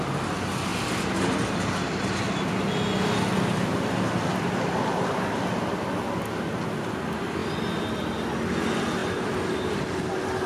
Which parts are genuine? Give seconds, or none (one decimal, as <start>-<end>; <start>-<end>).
0.0-10.5